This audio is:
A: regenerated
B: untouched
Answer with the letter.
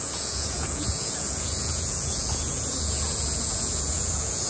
A